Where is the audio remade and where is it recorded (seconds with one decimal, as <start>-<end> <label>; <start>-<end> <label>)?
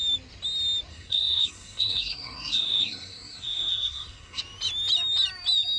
0.0-0.9 recorded; 0.9-4.4 remade; 4.4-5.8 recorded